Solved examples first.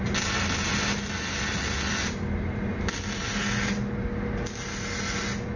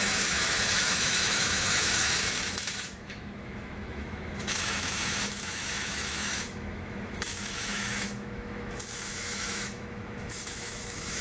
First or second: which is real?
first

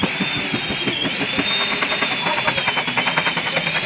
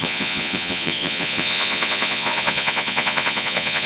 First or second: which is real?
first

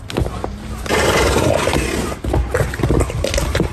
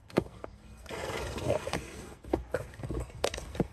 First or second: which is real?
first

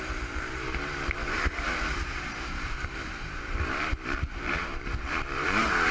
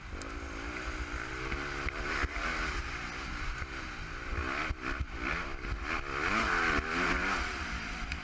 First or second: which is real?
second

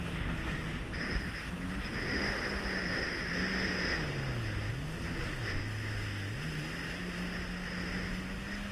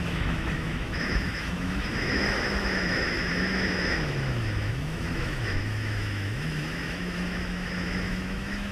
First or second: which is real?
first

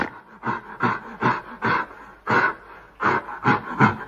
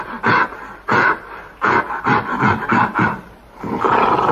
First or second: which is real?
first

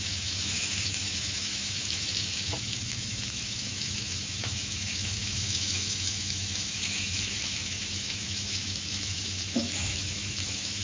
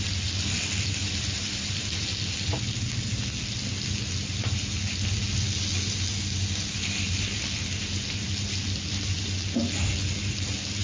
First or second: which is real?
second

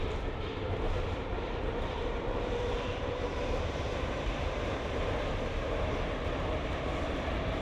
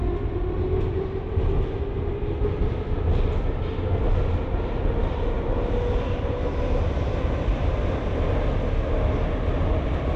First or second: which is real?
second